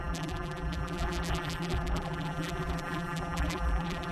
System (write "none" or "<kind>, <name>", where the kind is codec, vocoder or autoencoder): vocoder, BigVGAN v2